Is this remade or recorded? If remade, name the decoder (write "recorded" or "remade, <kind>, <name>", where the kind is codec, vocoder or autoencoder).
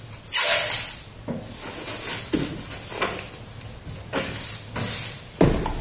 recorded